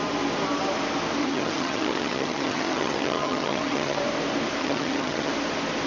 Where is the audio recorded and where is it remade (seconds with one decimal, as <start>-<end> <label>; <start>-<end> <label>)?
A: 0.0-1.2 recorded; 1.2-4.0 remade; 4.0-4.6 recorded; 4.6-5.3 remade; 5.3-5.9 recorded